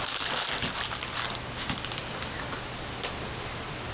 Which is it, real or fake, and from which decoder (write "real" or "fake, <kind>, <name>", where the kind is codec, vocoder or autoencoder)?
real